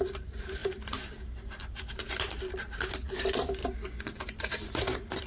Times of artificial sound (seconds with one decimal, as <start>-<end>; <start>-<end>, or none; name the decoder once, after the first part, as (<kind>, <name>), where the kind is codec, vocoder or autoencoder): 0.0-3.6 (vocoder, BigVGAN v2); 4.4-5.3